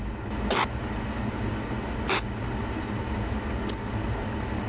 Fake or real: real